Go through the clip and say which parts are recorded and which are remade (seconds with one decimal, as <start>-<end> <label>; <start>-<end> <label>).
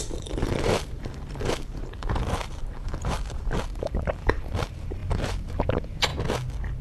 0.0-6.1 remade; 6.1-6.8 recorded